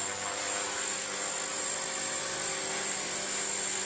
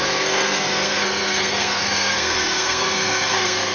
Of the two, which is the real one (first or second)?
first